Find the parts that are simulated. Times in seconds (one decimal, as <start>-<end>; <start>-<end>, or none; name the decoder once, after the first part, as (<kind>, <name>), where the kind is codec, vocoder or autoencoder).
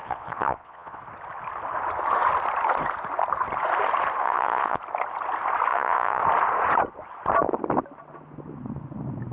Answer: 0.0-1.0 (vocoder, Vocos); 4.2-4.8; 5.7-6.2